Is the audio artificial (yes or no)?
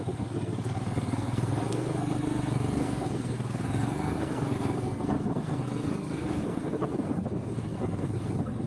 yes